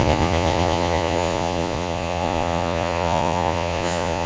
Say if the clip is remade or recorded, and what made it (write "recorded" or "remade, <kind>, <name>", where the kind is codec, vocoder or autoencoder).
remade, vocoder, Vocos